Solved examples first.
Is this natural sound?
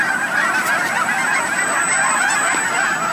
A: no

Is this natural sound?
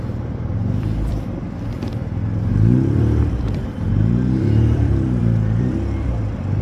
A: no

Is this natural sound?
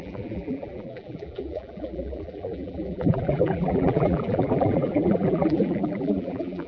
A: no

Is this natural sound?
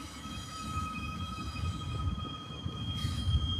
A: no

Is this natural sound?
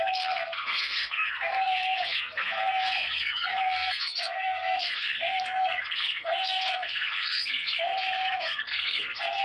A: no